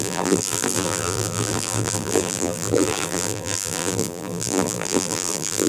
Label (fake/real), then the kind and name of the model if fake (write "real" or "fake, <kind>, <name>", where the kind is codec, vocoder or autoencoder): fake, vocoder, BigVGAN v2